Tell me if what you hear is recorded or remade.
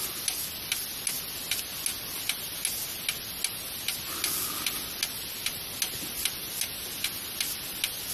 recorded